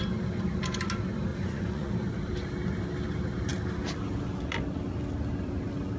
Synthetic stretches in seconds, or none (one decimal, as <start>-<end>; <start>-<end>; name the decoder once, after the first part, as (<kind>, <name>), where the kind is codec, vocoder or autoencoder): 1.3-1.9 (vocoder, Vocos)